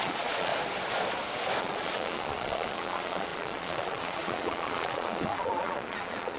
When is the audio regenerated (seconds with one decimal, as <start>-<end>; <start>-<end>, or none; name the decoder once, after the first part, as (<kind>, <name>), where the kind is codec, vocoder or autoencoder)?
0.0-0.5 (vocoder, Vocos); 1.6-6.4